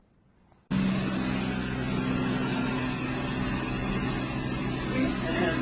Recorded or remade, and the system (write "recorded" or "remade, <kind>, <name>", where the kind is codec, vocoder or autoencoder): recorded